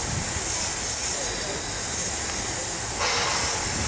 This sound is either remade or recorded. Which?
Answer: recorded